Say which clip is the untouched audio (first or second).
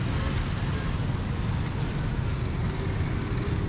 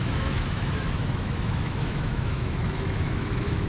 first